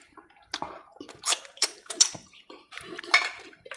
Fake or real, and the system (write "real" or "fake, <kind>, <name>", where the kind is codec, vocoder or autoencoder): fake, vocoder, BigVGAN v2